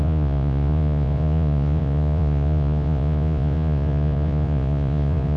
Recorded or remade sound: remade